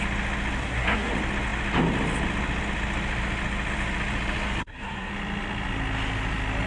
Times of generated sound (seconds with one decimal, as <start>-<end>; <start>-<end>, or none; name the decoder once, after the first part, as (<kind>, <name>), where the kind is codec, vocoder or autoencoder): 0.6-1.1 (codec, SNAC); 4.6-5.1